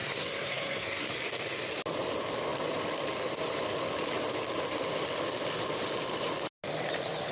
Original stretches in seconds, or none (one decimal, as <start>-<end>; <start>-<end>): 1.1-7.3